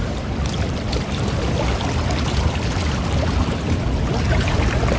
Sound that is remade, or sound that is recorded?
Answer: recorded